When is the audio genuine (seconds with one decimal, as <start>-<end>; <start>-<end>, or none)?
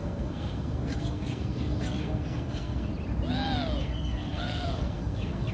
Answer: 2.9-3.8